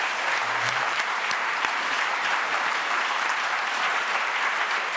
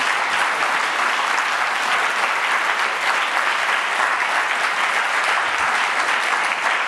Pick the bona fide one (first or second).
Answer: second